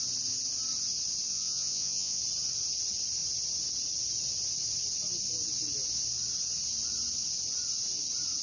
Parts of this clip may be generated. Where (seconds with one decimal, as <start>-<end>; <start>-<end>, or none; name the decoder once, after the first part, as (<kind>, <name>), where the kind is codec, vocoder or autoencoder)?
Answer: 1.3-2.2 (vocoder, Vocos)